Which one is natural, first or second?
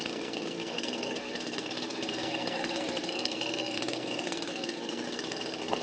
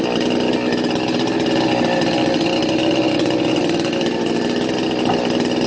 second